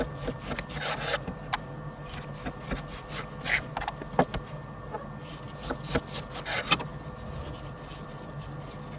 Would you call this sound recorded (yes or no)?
yes